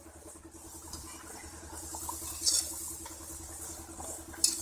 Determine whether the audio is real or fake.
real